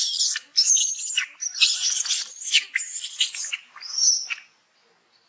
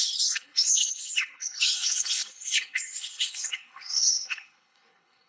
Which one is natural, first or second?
first